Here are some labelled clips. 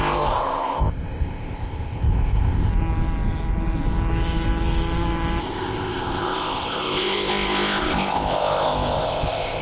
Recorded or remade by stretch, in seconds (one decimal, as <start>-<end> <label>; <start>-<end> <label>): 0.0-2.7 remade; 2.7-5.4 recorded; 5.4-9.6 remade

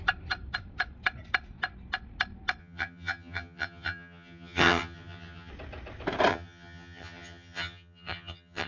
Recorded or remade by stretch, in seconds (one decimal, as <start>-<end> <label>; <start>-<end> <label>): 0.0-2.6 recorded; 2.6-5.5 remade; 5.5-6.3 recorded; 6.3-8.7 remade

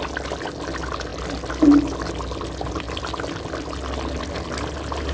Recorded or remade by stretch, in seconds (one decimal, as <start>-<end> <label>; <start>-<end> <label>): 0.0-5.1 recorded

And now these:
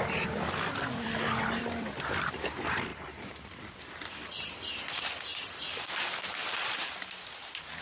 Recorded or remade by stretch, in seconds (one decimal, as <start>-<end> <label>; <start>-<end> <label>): 0.0-2.9 remade; 2.9-3.5 recorded; 3.5-5.3 remade; 5.3-7.8 recorded

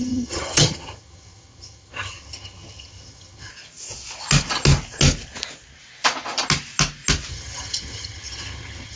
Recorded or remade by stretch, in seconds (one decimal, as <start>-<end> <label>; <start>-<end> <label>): 0.0-3.5 remade; 3.5-7.3 recorded; 7.3-9.0 remade

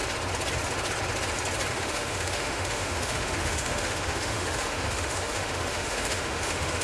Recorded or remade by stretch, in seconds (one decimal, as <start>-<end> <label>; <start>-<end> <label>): 0.0-1.7 recorded; 1.7-6.8 remade

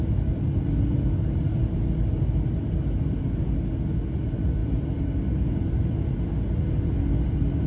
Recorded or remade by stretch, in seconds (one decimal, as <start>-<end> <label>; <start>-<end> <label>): 0.0-4.6 recorded; 4.6-5.7 remade; 5.7-7.7 recorded